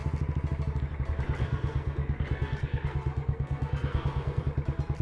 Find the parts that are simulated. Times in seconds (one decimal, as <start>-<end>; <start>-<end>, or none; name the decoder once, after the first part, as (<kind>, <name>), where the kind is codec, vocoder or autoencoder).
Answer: 1.4-4.4 (codec, SNAC)